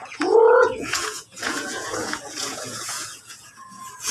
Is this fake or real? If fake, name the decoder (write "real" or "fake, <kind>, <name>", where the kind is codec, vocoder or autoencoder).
fake, vocoder, Vocos